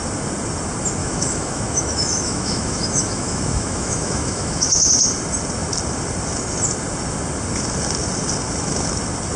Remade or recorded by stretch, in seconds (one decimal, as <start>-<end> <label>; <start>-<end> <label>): 0.0-1.0 recorded; 1.0-4.9 remade; 4.9-9.4 recorded